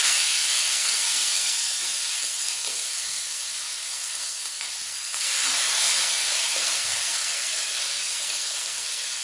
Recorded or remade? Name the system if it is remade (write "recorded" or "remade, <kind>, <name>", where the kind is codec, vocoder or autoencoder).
remade, codec, SNAC